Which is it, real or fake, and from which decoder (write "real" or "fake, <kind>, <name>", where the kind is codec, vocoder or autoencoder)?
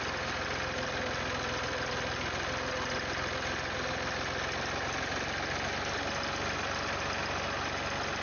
real